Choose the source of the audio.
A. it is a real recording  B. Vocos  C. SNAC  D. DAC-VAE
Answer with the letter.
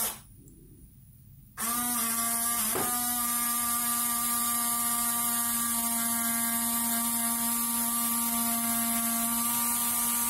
A